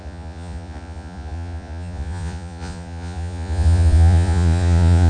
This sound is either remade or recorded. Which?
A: remade